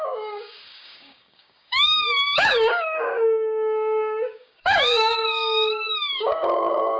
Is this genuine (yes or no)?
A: no